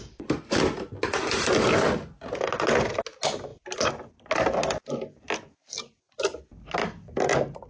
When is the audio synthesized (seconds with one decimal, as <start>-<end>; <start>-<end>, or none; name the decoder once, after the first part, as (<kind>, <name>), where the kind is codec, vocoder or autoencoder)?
none